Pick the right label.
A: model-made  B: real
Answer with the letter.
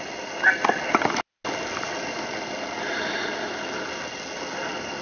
B